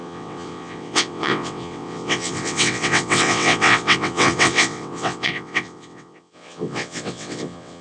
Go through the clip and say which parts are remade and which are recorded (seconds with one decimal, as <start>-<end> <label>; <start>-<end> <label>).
0.0-7.8 remade